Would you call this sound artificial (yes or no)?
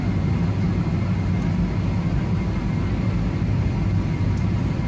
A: no